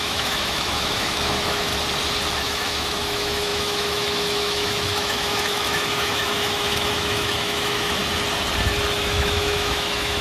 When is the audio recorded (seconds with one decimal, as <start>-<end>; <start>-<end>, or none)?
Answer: 1.7-2.4; 8.0-9.0